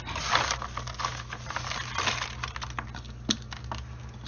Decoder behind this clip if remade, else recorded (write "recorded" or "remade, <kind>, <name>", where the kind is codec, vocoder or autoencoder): recorded